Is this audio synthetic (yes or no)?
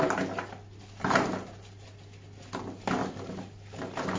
no